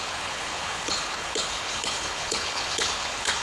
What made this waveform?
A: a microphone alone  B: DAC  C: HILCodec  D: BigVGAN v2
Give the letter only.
C